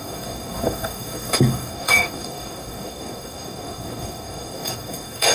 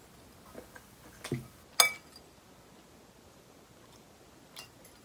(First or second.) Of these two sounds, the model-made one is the first